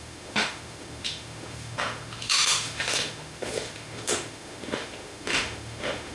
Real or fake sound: fake